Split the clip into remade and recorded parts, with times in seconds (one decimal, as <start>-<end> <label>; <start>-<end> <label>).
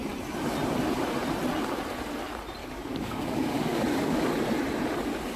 0.0-2.6 recorded; 2.6-4.3 remade; 4.3-5.4 recorded